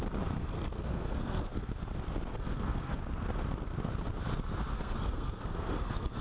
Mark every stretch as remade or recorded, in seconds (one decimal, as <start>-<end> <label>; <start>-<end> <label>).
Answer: 0.0-0.4 recorded; 0.4-1.7 remade; 1.7-2.3 recorded; 2.3-3.0 remade; 3.0-4.7 recorded; 4.7-6.2 remade